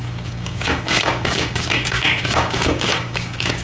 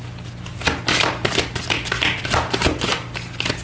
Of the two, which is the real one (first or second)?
second